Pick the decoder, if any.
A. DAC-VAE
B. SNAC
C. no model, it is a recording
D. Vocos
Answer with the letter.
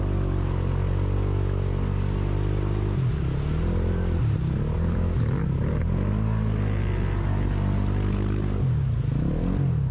C